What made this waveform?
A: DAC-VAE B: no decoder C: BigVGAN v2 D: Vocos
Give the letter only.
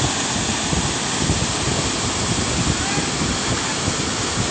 B